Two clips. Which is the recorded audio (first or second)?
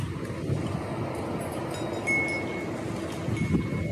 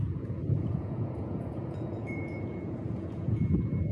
first